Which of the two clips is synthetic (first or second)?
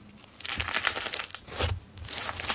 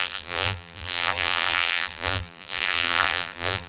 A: second